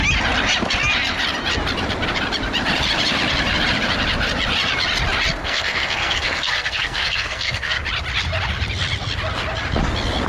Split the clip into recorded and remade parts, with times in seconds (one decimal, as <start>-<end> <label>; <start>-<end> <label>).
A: 0.0-5.4 recorded; 5.4-7.8 remade; 7.8-10.3 recorded